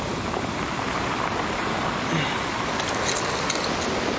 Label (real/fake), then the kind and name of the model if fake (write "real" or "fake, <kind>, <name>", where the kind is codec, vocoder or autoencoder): real